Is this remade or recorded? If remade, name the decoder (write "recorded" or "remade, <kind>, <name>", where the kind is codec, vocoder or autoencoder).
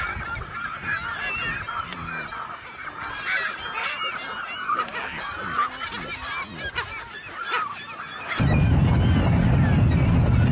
recorded